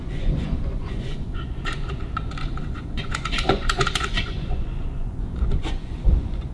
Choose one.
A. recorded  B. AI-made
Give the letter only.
B